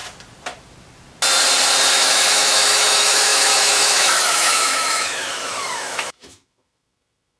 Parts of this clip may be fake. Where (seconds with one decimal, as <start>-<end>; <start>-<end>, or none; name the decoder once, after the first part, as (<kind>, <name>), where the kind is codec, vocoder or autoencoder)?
1.9-7.4 (autoencoder, DAC-VAE)